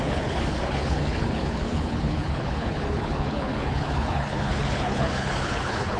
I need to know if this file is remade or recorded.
remade